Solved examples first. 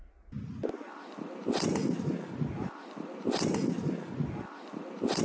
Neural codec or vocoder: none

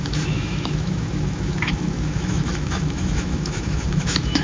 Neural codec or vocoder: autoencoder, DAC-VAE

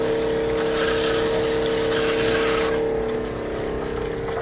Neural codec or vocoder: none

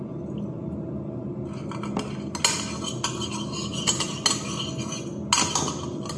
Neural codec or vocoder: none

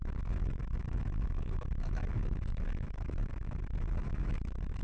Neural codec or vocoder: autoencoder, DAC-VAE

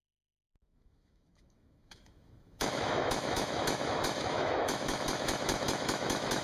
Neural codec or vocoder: autoencoder, DAC-VAE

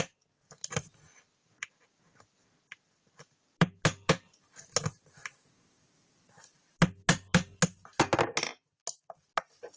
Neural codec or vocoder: none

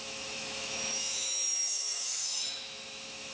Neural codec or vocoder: autoencoder, DAC-VAE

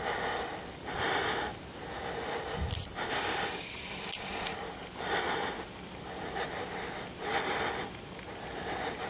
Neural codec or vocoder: none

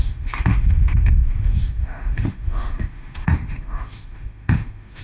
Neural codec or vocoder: autoencoder, DAC-VAE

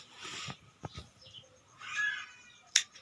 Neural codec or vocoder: none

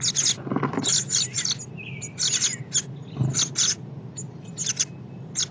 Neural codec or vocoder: none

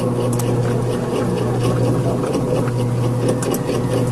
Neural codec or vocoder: none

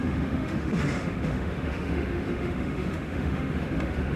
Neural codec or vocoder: autoencoder, DAC-VAE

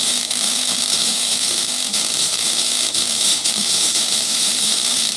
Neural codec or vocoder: autoencoder, DAC-VAE